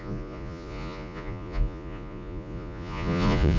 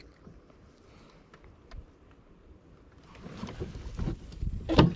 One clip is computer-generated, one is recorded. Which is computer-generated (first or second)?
first